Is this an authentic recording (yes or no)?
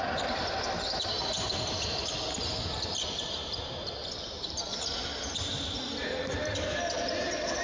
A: yes